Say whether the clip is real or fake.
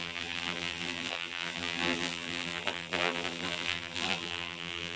fake